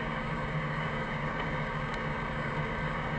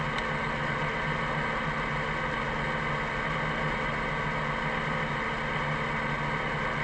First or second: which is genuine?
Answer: second